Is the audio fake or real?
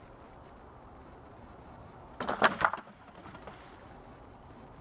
real